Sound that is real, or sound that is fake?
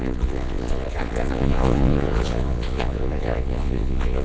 fake